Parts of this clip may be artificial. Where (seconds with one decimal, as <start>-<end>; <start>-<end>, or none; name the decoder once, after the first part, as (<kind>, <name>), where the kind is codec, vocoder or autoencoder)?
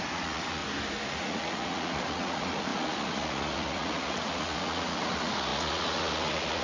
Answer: 0.0-0.6 (vocoder, Vocos); 1.1-6.6